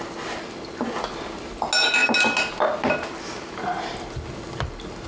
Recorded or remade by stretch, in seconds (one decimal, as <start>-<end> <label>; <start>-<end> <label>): 0.0-5.1 recorded